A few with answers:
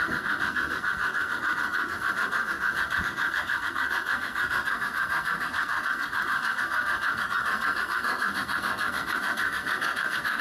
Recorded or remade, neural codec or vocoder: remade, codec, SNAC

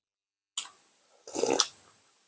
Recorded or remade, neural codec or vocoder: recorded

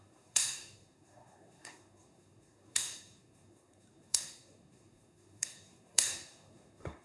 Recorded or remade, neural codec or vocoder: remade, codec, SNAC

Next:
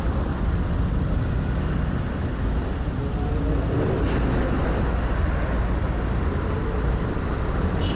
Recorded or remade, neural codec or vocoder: recorded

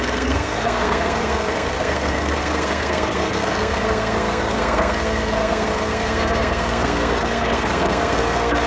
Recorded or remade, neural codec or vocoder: remade, codec, SNAC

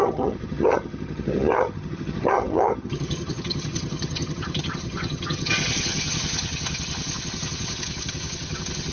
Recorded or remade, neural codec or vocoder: remade, vocoder, HiFi-GAN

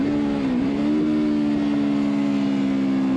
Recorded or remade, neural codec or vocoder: recorded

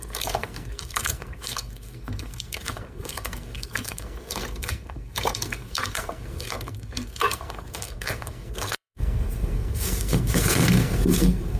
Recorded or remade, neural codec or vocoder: remade, codec, SNAC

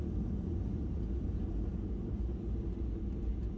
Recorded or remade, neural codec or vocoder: recorded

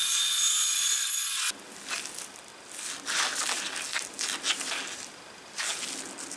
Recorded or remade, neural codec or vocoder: recorded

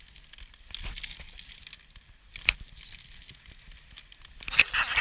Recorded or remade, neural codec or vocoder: recorded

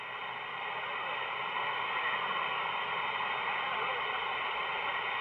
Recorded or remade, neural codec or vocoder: recorded